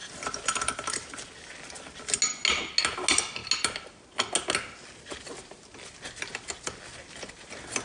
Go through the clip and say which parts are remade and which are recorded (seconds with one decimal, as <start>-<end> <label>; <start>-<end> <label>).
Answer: 0.0-7.8 recorded